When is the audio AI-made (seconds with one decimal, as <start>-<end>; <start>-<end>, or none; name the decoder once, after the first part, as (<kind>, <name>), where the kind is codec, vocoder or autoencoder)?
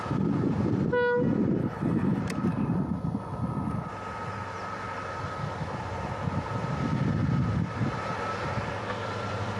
1.6-2.2 (codec, HILCodec)